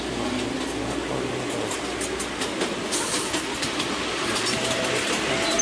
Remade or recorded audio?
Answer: recorded